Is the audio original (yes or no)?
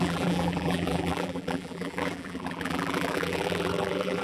no